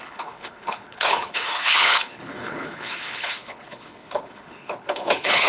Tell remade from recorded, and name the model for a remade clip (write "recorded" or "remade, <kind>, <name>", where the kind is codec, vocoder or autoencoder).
remade, codec, HILCodec